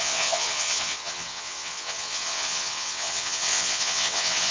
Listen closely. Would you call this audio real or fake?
fake